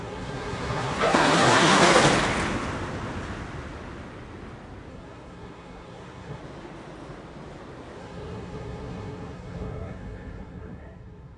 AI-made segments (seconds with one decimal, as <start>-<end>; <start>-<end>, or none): 0.0-2.0; 4.9-6.4; 8.0-11.4